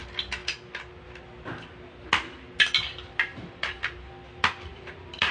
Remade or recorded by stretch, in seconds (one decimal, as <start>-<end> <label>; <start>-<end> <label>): 0.0-3.3 recorded; 3.3-4.1 remade; 4.1-4.7 recorded; 4.7-5.3 remade